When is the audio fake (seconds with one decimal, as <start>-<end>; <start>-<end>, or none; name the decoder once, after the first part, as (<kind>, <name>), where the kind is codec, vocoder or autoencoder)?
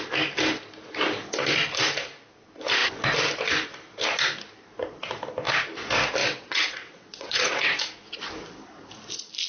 6.2-7.8 (vocoder, WaveNeXt)